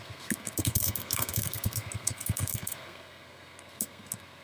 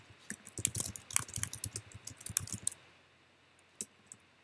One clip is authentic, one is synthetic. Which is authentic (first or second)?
second